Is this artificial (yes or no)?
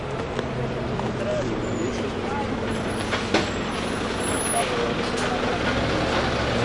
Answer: no